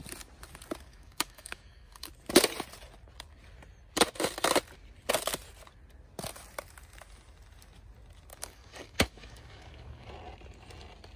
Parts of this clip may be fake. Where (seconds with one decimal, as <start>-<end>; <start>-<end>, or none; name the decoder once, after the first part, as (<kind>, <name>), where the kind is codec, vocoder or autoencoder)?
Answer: 0.9-2.1 (codec, DAC); 8.3-10.1